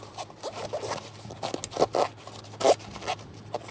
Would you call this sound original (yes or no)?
yes